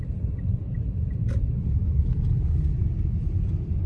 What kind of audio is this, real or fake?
real